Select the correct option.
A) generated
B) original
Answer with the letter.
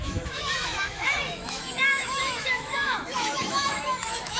A